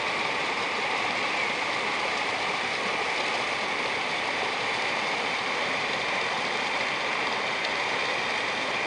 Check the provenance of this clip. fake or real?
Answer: real